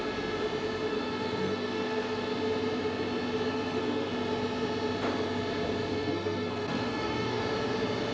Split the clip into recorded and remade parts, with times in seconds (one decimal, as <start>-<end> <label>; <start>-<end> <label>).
0.0-0.9 recorded; 0.9-2.3 remade; 2.3-3.5 recorded; 3.5-4.1 remade; 4.1-5.9 recorded; 5.9-7.4 remade; 7.4-8.1 recorded